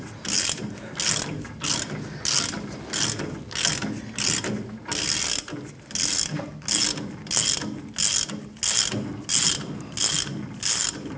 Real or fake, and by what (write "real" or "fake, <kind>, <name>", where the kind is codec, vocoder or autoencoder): real